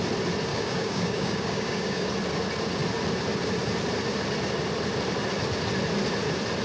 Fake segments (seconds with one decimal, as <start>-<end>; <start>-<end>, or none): 0.5-2.1